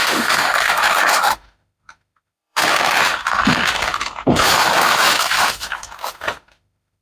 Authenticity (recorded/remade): remade